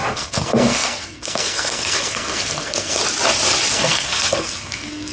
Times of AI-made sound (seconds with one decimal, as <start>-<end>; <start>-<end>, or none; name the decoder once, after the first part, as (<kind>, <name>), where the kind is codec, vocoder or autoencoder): 0.0-3.0 (codec, SNAC); 3.7-5.1